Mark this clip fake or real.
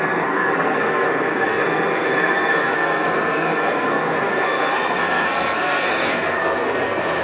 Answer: fake